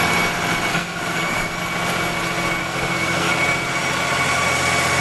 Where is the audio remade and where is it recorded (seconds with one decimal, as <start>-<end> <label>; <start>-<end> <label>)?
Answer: 0.0-0.7 recorded; 0.7-1.6 remade; 1.6-2.6 recorded; 2.6-3.3 remade; 3.3-5.0 recorded